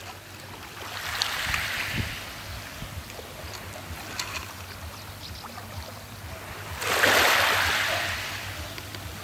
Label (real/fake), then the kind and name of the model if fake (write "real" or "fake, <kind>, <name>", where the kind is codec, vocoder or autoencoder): real